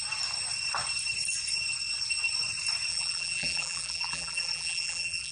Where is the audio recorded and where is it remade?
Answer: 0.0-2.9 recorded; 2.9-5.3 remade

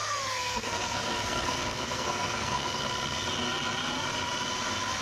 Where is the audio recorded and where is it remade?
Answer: 0.0-2.8 remade; 2.8-5.0 recorded

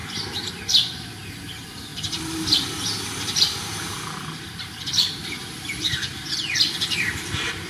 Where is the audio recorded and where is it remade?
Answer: 0.0-1.3 recorded; 1.3-7.7 remade

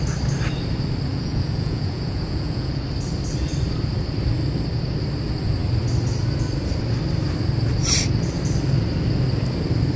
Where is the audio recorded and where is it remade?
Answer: 0.0-1.1 recorded; 1.1-2.8 remade; 2.8-10.0 recorded

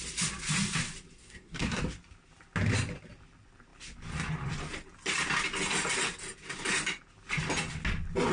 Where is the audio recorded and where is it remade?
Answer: 0.0-1.2 recorded; 1.2-1.8 remade; 1.8-8.3 recorded

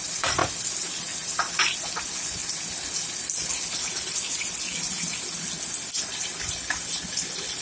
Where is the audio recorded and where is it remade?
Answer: 0.0-7.6 recorded

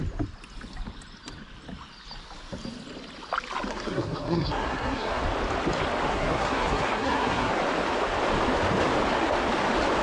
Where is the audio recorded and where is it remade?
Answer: 0.0-3.7 recorded; 3.7-5.2 remade; 5.2-6.1 recorded; 6.1-7.5 remade; 7.5-10.0 recorded

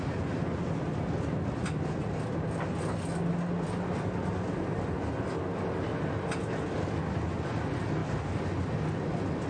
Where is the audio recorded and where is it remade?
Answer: 0.0-9.5 recorded